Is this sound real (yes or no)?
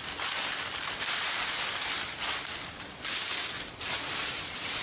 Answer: yes